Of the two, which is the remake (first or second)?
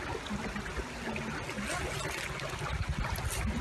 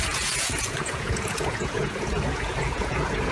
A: second